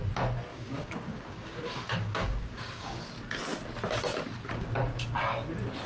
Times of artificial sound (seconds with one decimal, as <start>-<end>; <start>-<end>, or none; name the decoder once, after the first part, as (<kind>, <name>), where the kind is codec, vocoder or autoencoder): 0.5-3.0 (codec, DAC)